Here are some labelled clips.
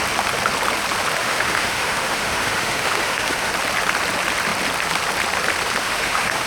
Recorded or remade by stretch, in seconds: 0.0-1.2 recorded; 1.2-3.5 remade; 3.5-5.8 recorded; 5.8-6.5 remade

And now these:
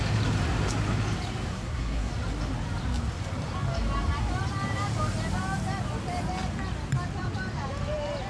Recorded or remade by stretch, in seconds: 0.0-1.5 recorded; 1.5-2.1 remade; 2.1-8.3 recorded

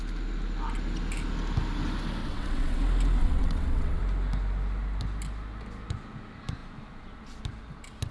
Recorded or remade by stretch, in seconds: 0.0-2.2 recorded; 2.2-2.8 remade; 2.8-3.2 recorded; 3.2-4.0 remade; 4.0-8.1 recorded

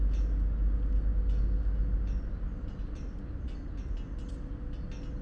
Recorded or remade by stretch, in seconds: 0.0-5.2 recorded

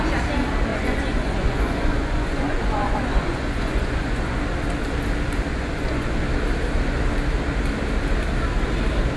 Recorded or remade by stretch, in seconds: 0.0-0.7 recorded; 0.7-4.4 remade; 4.4-5.5 recorded; 5.5-6.2 remade; 6.2-9.2 recorded

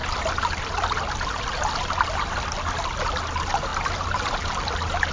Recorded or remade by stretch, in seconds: 0.0-5.1 recorded

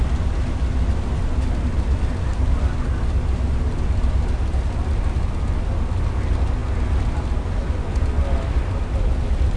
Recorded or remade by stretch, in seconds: 0.0-9.6 recorded

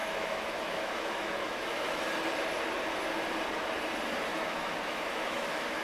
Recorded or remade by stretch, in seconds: 0.0-2.0 remade; 2.0-4.3 recorded; 4.3-5.8 remade